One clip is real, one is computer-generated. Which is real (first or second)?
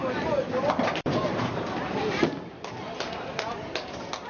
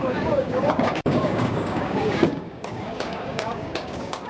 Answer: first